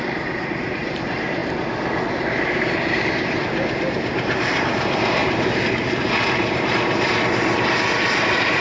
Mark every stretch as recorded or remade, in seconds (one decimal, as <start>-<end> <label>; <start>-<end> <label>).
0.0-1.4 remade; 1.4-2.1 recorded; 2.1-8.6 remade